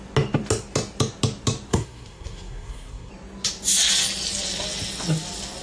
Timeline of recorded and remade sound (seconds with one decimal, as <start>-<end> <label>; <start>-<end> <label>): 0.0-1.7 recorded; 1.7-3.1 remade; 3.1-5.6 recorded